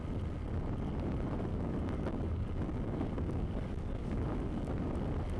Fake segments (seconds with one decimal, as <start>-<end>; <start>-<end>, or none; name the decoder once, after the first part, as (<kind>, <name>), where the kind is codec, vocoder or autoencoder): 1.5-4.7 (codec, DAC)